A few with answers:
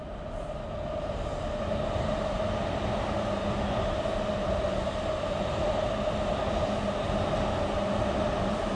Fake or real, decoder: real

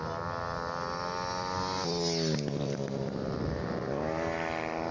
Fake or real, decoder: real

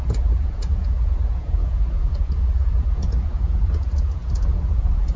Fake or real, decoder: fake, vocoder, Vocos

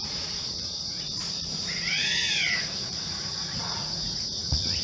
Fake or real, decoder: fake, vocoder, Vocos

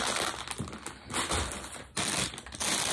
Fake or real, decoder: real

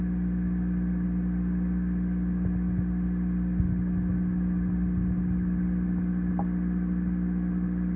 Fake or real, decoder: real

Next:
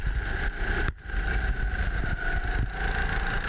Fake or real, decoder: real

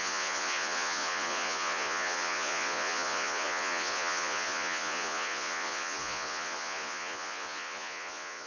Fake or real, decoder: fake, vocoder, Vocos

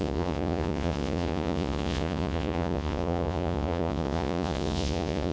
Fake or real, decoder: fake, vocoder, Vocos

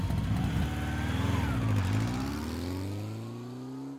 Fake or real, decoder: real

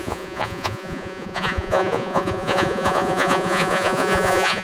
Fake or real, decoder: fake, vocoder, Vocos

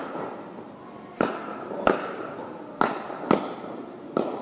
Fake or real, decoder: real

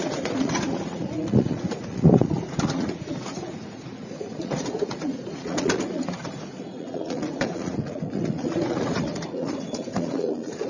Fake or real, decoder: fake, vocoder, Vocos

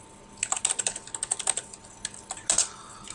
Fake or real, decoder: real